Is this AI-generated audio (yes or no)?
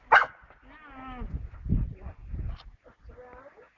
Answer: no